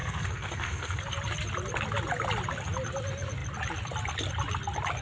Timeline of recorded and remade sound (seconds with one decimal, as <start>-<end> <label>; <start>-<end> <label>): 0.0-1.0 remade; 1.0-5.0 recorded